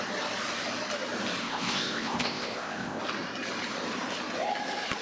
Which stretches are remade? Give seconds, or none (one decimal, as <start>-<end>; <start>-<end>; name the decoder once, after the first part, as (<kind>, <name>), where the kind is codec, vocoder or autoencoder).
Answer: 1.4-3.0 (codec, ZipCodec)